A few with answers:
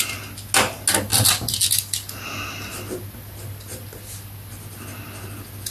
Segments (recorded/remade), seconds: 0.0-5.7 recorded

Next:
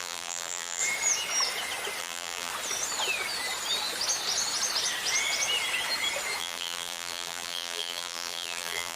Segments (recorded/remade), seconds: 0.0-0.8 remade; 0.8-2.0 recorded; 2.0-2.5 remade; 2.5-6.4 recorded; 6.4-9.0 remade